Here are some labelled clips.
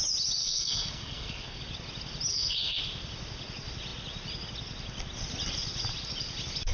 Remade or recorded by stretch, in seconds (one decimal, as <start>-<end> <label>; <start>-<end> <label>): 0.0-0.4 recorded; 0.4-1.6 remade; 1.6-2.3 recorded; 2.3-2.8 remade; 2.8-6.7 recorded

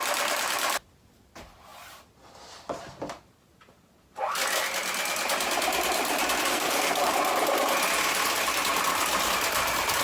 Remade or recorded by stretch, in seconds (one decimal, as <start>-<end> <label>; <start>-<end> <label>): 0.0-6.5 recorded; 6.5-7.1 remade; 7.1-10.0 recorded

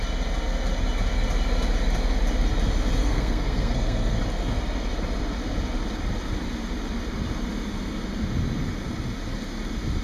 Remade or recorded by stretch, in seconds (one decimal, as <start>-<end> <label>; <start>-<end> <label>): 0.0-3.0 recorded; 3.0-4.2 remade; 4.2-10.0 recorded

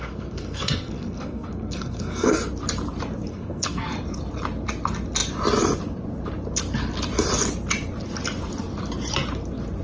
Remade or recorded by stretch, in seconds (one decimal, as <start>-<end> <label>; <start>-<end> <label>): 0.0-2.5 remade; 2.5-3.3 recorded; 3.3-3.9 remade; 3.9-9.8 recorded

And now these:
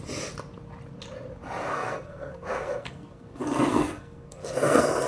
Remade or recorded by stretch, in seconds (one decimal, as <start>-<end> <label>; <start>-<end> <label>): 0.0-1.7 recorded; 1.7-5.1 remade

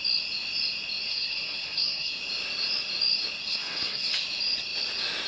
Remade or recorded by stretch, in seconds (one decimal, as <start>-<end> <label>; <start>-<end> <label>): 0.0-1.1 recorded; 1.1-2.2 remade; 2.2-3.5 recorded; 3.5-4.1 remade; 4.1-5.3 recorded